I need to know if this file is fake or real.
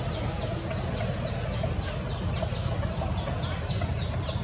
real